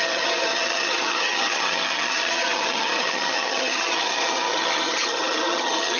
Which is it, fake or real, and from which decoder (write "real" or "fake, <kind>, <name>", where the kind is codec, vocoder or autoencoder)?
fake, vocoder, HiFi-GAN